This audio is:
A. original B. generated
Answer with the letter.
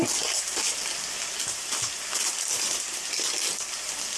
A